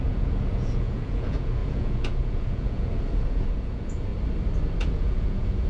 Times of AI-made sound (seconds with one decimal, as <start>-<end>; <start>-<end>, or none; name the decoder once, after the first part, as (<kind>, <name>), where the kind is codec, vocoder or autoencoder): 0.0-4.1 (vocoder, Vocos); 4.8-5.7